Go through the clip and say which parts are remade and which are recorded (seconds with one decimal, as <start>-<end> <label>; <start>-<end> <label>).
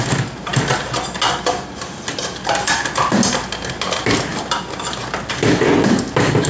0.0-6.5 recorded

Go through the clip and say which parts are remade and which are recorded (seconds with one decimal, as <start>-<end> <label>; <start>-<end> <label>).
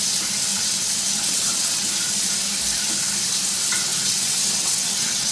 0.0-0.5 recorded; 0.5-1.9 remade; 1.9-3.9 recorded; 3.9-5.3 remade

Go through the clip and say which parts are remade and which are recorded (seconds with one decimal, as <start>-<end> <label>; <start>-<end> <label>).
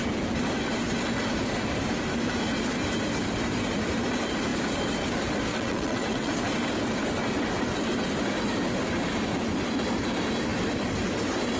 0.0-5.5 recorded; 5.5-6.4 remade; 6.4-11.6 recorded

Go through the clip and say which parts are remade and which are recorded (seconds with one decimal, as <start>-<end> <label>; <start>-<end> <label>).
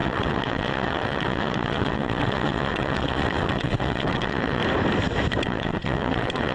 0.0-4.6 remade; 4.6-5.4 recorded; 5.4-6.5 remade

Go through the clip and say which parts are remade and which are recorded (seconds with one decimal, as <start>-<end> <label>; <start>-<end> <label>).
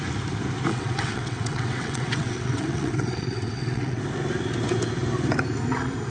0.0-0.7 recorded; 0.7-4.0 remade; 4.0-6.1 recorded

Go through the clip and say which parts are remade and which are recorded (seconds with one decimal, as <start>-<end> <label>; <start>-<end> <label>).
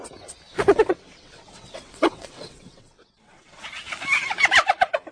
0.0-0.5 recorded; 0.5-3.6 remade; 3.6-5.1 recorded